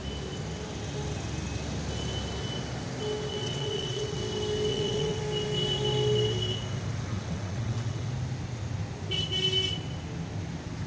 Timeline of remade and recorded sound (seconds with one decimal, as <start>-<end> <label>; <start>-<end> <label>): 0.0-3.3 recorded; 3.3-4.2 remade; 4.2-4.7 recorded; 4.7-5.2 remade; 5.2-7.1 recorded; 7.1-8.1 remade; 8.1-10.9 recorded